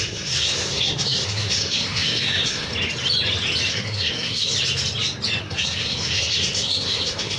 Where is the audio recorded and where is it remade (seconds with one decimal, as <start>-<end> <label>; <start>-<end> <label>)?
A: 0.0-2.7 remade; 2.7-3.7 recorded; 3.7-4.5 remade; 4.5-5.4 recorded; 5.4-7.4 remade